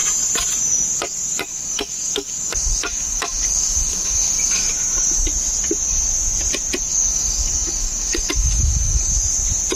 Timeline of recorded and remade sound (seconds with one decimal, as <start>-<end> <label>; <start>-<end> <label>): 0.0-1.5 recorded; 1.5-4.7 remade; 4.7-6.9 recorded; 6.9-9.1 remade; 9.1-9.8 recorded